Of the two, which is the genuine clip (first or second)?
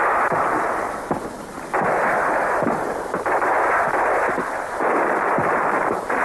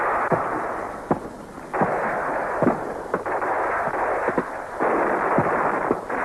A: second